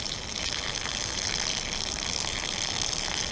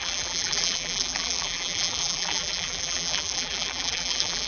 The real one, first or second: first